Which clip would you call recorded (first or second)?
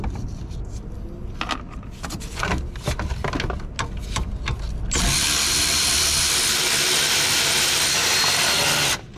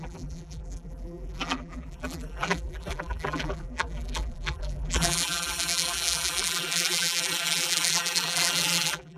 first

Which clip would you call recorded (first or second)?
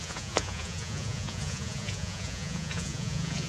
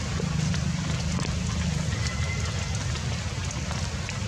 second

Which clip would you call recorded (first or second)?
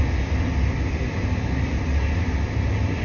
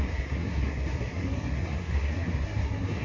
first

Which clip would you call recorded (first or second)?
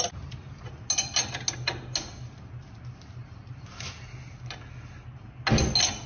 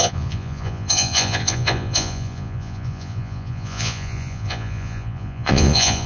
first